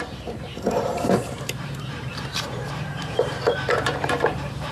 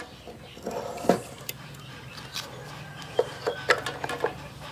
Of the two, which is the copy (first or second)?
first